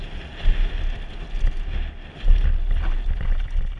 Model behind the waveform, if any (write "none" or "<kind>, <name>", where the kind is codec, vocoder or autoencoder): none